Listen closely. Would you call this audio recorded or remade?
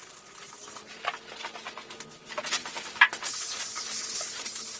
recorded